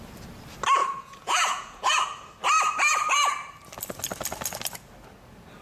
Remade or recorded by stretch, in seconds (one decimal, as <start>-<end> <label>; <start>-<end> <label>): 0.0-0.8 recorded; 0.8-2.0 remade; 2.0-5.6 recorded